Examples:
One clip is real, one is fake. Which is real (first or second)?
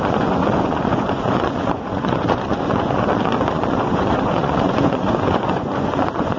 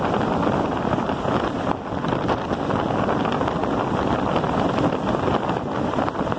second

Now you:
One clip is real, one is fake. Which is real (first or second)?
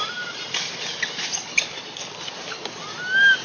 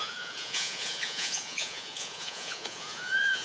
first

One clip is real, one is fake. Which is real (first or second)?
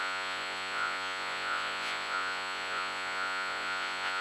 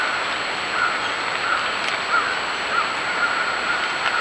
second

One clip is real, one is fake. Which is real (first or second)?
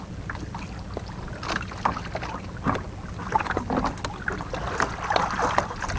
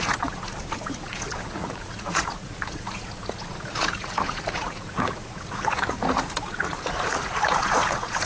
first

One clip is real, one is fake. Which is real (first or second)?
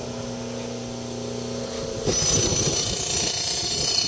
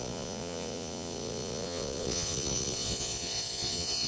first